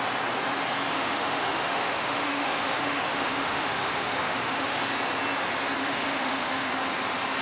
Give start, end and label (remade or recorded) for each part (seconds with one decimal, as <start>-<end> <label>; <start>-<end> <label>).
0.0-0.9 recorded; 0.9-4.8 remade; 4.8-5.8 recorded; 5.8-6.7 remade; 6.7-7.4 recorded